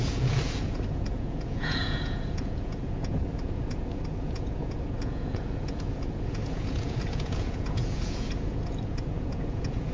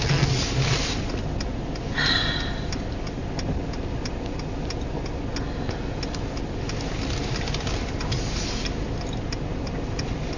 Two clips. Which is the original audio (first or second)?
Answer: second